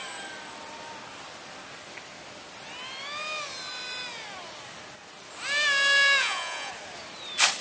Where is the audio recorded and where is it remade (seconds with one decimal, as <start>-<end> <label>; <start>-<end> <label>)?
0.0-6.2 recorded; 6.2-6.7 remade; 6.7-7.6 recorded